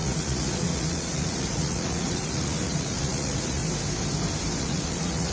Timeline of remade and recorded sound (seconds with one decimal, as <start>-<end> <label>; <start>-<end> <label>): 0.0-3.6 remade; 3.6-4.6 recorded; 4.6-5.3 remade